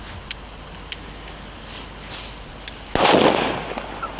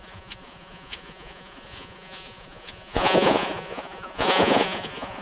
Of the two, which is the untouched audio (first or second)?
first